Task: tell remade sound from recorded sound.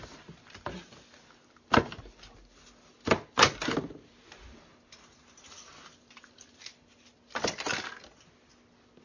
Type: recorded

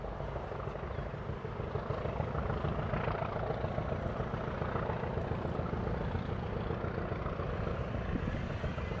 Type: recorded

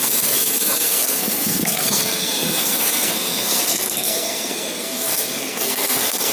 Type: remade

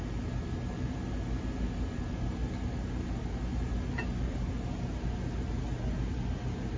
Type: recorded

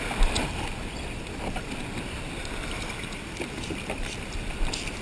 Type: recorded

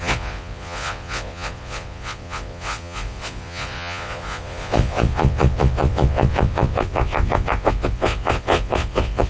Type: remade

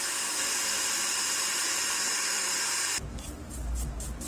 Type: remade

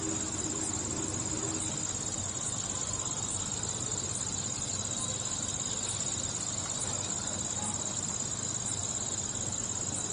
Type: recorded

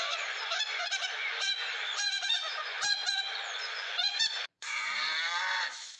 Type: remade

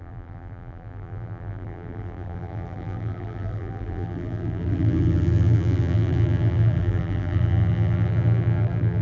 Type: remade